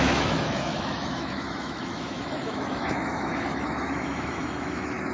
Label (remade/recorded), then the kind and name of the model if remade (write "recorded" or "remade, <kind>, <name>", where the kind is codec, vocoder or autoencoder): remade, autoencoder, DAC-VAE